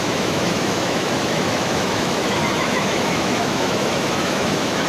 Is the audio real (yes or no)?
no